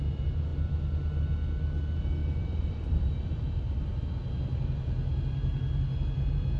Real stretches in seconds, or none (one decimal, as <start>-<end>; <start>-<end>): 0.0-2.2; 3.4-6.6